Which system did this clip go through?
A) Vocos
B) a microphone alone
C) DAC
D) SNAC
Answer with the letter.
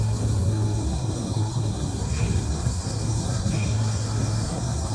D